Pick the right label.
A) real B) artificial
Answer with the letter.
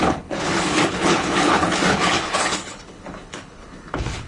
B